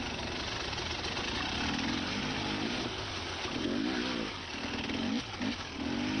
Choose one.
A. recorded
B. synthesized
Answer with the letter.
A